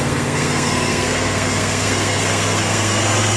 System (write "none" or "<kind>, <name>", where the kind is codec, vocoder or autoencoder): codec, SNAC